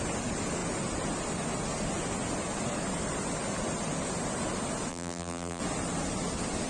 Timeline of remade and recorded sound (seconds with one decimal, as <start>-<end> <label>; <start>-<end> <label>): 0.0-4.9 recorded; 4.9-5.6 remade; 5.6-6.7 recorded